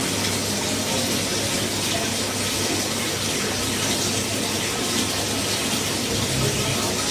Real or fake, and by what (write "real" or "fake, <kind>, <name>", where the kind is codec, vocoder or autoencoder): real